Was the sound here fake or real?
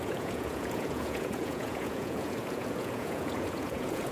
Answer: fake